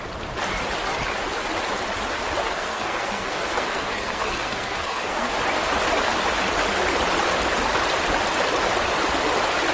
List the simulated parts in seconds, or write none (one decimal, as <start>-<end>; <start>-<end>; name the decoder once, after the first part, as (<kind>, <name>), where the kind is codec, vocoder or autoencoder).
2.4-5.3 (codec, SNAC)